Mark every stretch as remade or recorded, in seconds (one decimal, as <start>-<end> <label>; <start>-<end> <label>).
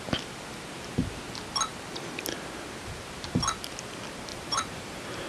0.0-4.3 recorded; 4.3-5.3 remade